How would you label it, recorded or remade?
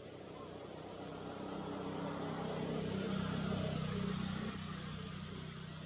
recorded